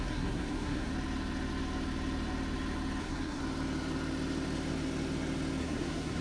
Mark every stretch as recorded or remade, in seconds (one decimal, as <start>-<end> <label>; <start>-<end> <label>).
0.0-0.9 remade; 0.9-3.0 recorded; 3.0-3.4 remade; 3.4-5.6 recorded; 5.6-6.2 remade